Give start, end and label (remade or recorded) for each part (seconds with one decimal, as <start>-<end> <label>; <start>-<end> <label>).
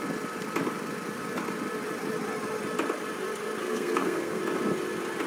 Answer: 0.0-3.6 recorded; 3.6-4.4 remade; 4.4-5.3 recorded